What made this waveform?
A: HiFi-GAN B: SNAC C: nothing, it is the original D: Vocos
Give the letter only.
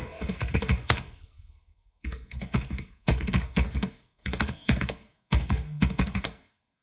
B